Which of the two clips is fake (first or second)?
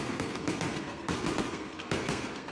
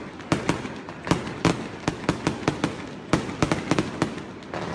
first